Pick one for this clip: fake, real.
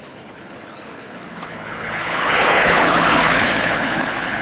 fake